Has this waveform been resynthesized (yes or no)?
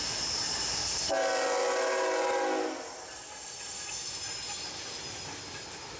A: no